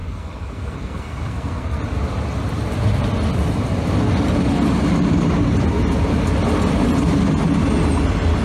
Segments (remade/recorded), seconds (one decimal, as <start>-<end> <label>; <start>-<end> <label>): 0.0-1.8 remade; 1.8-8.4 recorded